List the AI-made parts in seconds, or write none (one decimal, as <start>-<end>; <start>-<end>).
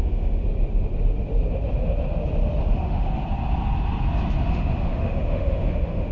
0.0-0.4; 2.6-3.2; 4.5-6.1